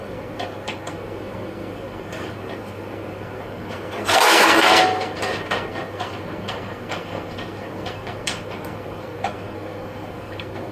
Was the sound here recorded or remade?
remade